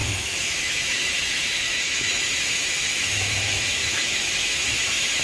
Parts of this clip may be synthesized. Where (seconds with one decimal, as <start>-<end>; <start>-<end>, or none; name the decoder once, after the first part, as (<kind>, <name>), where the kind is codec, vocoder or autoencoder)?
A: 0.0-5.2 (autoencoder, DAC-VAE)